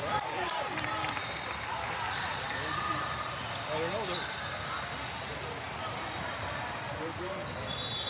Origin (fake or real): real